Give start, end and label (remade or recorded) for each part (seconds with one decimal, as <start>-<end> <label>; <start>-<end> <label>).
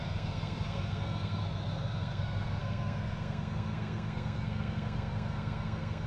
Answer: 0.0-6.1 remade